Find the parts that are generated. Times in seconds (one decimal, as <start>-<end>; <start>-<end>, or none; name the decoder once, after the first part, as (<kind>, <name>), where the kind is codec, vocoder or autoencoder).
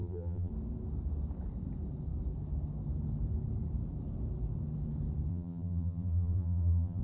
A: 0.0-0.5 (vocoder, BigVGAN v2); 5.3-7.0